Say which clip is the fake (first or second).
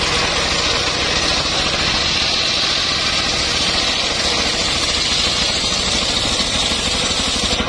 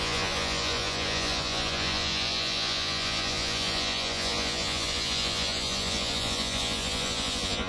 second